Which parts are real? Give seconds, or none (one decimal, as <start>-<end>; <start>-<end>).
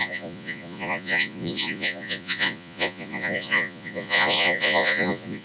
none